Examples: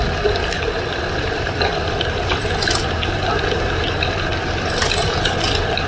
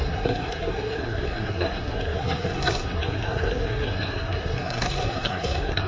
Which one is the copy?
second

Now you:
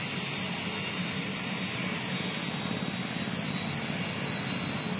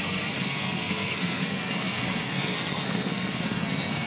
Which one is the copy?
second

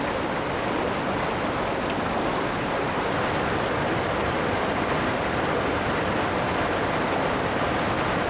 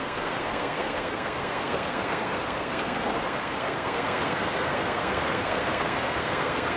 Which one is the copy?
second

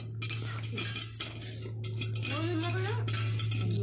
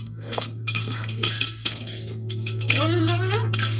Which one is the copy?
second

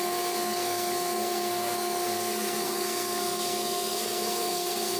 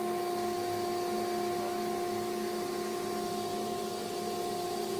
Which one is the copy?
first